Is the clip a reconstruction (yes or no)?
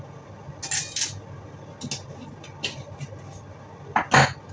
no